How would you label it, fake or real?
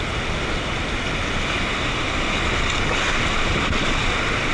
real